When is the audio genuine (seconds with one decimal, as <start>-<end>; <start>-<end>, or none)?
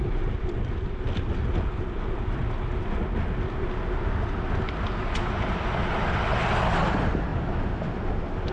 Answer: 0.0-8.5